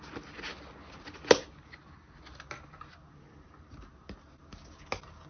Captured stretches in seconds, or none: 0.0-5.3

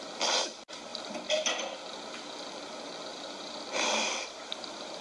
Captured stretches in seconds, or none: 0.0-0.9; 1.4-3.1

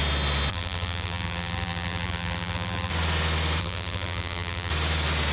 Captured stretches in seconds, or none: 0.0-0.5; 2.9-3.6; 4.7-5.3

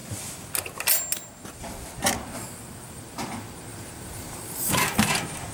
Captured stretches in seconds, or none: 0.0-3.7; 5.1-5.5

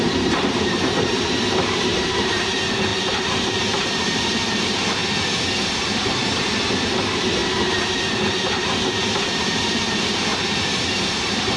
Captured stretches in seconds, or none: 2.9-3.5; 5.0-5.6